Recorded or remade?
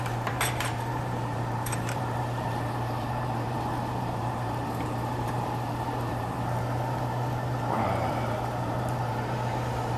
remade